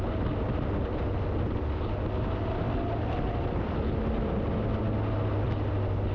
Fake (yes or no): no